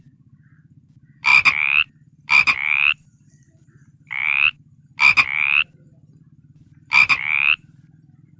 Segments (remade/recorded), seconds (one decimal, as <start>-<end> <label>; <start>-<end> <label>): 0.0-1.3 remade; 1.3-1.9 recorded; 1.9-4.2 remade; 4.2-5.7 recorded; 5.7-8.4 remade